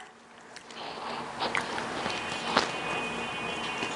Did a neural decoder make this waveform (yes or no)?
no